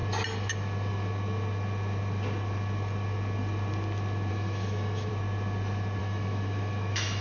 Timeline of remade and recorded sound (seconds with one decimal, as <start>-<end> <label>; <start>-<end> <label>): 0.0-4.3 recorded; 4.3-5.1 remade; 5.1-6.0 recorded; 6.0-7.2 remade